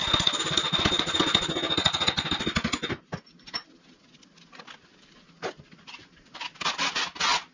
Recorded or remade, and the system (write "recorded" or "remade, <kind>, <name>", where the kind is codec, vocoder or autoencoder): recorded